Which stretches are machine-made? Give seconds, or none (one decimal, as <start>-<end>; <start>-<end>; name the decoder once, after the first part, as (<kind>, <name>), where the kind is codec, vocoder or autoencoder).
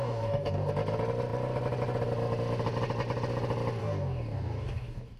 0.0-0.7 (codec, DAC); 3.8-5.2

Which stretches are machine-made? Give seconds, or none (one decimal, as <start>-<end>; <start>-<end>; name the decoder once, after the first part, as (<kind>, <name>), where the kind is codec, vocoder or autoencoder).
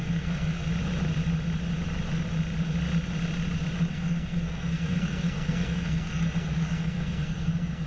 0.0-0.7 (codec, SNAC); 3.9-7.9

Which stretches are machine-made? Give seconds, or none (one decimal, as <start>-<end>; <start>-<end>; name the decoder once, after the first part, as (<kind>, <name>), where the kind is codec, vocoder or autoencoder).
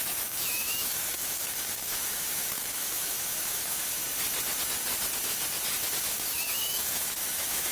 0.0-4.0 (autoencoder, DAC-VAE); 6.0-7.7